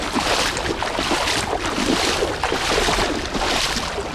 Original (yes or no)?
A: yes